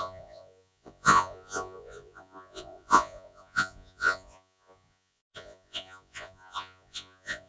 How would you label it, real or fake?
fake